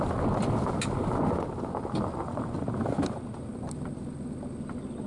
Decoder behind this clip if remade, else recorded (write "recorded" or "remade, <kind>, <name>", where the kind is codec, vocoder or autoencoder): recorded